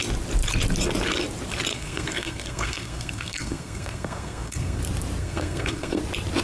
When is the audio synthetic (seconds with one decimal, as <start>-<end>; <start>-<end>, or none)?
1.7-4.8; 5.2-6.0